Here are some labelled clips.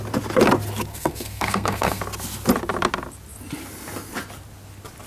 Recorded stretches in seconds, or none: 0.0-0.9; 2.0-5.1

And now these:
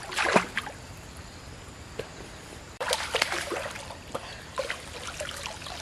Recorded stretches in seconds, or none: 0.0-2.1

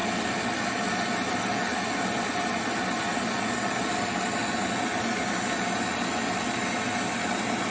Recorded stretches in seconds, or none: 0.0-7.7

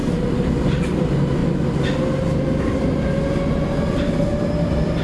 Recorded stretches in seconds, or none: 0.0-5.0

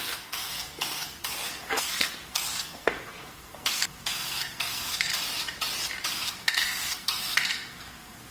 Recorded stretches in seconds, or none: 5.1-6.1